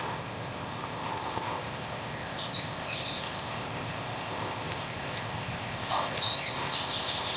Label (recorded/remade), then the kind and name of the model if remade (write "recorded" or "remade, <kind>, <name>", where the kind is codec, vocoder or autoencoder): remade, codec, ZipCodec